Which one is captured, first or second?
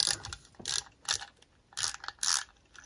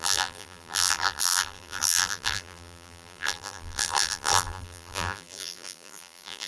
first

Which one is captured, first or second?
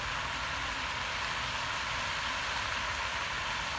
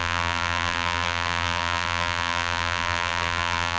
first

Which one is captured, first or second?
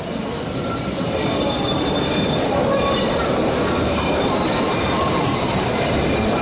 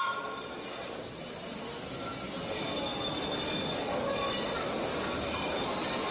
second